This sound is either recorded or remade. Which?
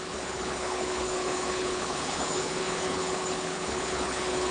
remade